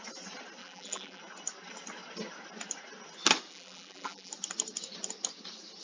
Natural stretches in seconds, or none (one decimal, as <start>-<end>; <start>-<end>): 0.0-0.6; 1.2-3.5; 4.3-5.8